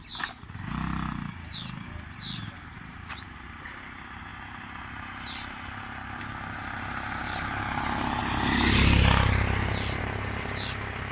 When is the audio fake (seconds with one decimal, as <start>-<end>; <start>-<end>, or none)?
none